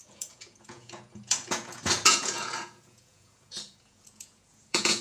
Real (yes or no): no